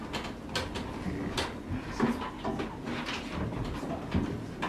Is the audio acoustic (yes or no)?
yes